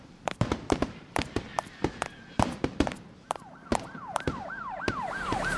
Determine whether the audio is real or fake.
fake